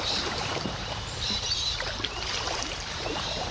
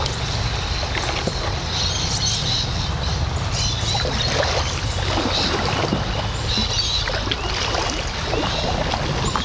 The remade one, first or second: first